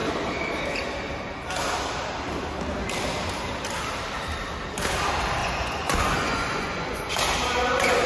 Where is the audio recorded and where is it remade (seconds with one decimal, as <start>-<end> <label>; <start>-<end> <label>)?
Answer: 0.0-5.4 recorded; 5.4-7.1 remade; 7.1-8.1 recorded